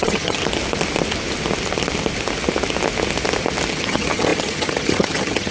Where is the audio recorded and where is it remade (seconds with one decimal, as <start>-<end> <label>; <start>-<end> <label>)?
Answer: 0.0-0.4 remade; 0.4-3.7 recorded; 3.7-5.5 remade